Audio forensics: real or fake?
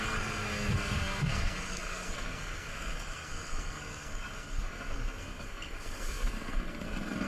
fake